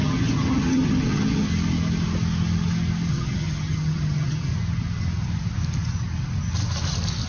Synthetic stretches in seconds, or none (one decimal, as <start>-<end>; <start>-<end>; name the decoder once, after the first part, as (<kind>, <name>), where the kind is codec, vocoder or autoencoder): 0.0-1.5 (vocoder, HiFi-GAN); 3.1-4.5